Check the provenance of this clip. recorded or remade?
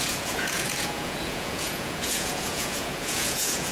remade